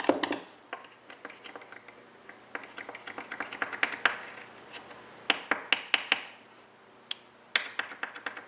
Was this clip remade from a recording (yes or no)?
no